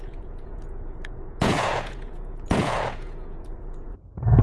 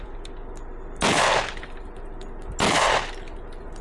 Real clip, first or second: second